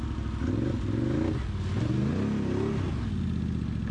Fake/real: real